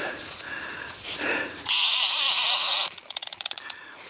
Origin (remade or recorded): remade